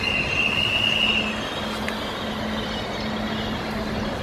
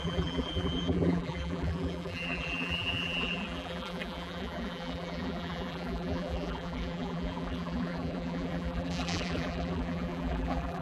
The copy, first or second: second